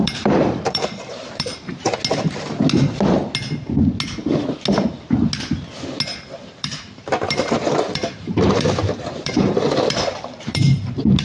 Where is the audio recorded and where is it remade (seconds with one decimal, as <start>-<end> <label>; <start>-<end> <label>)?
0.0-2.0 remade; 2.0-6.4 recorded; 6.4-11.2 remade